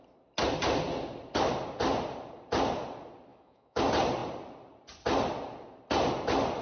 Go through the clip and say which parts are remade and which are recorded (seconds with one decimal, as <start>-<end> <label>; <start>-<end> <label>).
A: 0.0-3.3 recorded; 3.3-3.8 remade; 3.8-6.6 recorded